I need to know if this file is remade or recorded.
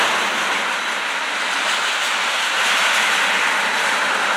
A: recorded